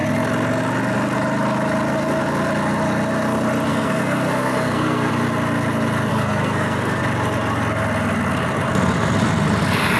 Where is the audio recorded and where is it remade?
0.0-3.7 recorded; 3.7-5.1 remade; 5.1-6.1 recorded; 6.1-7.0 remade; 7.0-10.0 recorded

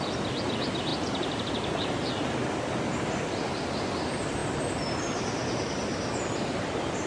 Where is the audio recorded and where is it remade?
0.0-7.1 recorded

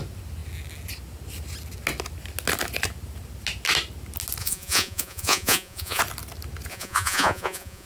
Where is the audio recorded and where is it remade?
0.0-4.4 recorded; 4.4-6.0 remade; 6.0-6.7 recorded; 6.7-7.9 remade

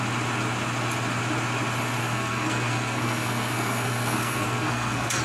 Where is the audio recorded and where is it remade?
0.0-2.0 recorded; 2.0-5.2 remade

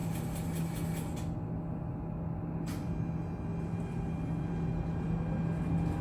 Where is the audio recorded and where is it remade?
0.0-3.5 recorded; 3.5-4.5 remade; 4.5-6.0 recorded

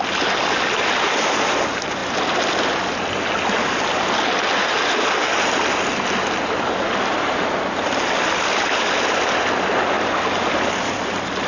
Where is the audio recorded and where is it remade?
0.0-11.5 recorded

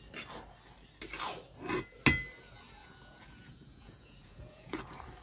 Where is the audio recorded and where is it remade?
0.0-2.8 recorded; 2.8-4.8 remade; 4.8-5.2 recorded

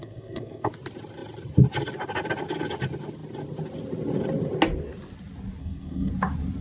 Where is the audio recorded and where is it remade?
0.0-0.7 remade; 0.7-5.6 recorded; 5.6-6.1 remade; 6.1-6.6 recorded